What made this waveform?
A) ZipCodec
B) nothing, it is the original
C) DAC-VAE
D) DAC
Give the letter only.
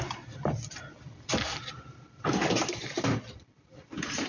B